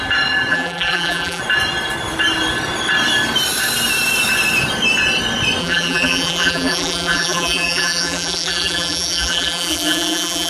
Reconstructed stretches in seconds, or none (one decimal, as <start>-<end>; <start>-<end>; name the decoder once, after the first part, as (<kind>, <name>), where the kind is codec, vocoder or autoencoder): 0.5-1.4 (vocoder, BigVGAN v2); 5.6-10.5